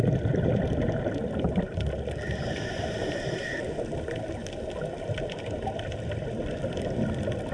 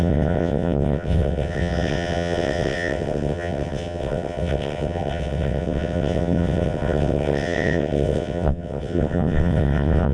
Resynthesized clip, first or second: second